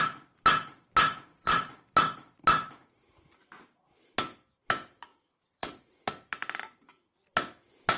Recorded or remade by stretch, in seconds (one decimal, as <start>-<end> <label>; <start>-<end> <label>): 0.0-1.3 recorded; 1.3-1.8 remade; 1.8-5.1 recorded; 5.1-5.9 remade; 5.9-8.0 recorded